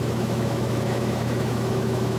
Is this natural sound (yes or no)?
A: no